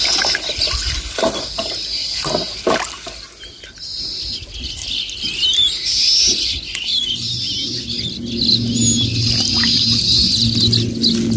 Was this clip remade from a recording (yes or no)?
no